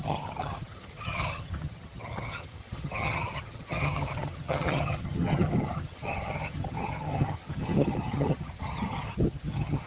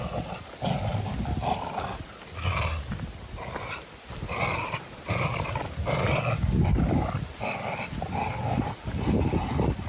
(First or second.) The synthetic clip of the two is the first